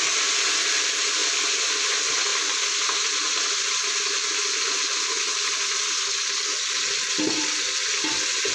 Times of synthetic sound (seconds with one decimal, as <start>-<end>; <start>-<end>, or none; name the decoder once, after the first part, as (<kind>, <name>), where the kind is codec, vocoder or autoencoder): none